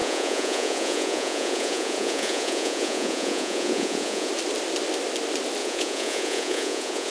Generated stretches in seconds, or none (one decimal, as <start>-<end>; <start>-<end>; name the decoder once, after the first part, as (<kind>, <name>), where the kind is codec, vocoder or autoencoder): 0.0-4.3 (vocoder, Vocos); 5.6-7.1